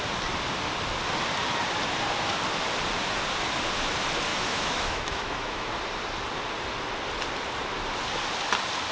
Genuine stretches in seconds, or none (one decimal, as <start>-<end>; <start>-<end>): 0.0-4.3; 5.7-8.9